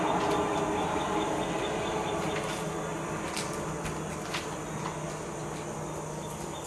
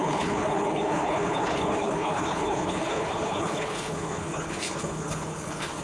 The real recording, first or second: first